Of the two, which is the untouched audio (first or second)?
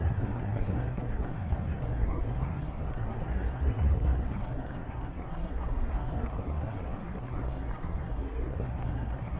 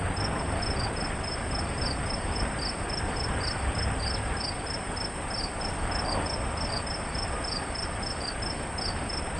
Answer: second